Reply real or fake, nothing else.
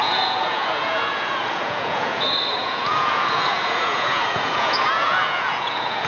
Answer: fake